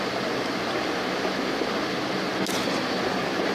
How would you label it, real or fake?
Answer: real